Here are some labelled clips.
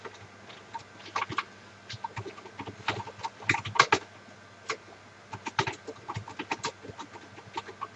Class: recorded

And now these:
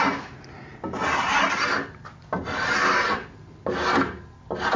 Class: recorded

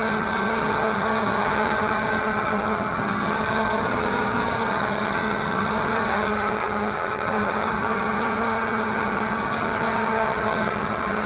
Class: remade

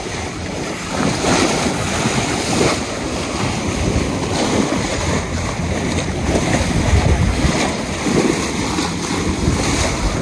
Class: recorded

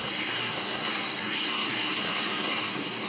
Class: remade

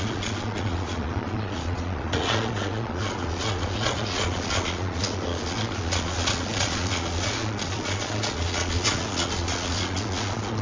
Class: remade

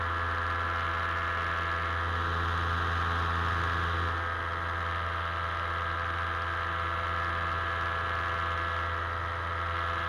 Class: recorded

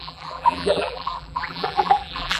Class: remade